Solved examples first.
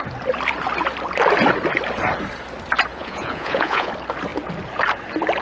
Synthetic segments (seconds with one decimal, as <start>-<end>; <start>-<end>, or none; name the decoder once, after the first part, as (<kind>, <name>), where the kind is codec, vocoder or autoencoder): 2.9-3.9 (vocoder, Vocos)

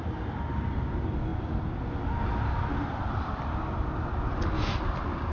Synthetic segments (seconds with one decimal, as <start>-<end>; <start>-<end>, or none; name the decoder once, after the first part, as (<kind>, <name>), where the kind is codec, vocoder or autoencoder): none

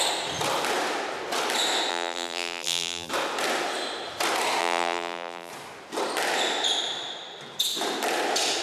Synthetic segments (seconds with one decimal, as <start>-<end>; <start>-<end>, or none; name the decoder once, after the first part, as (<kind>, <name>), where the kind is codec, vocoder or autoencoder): 1.9-3.1 (vocoder, BigVGAN v2); 4.6-5.5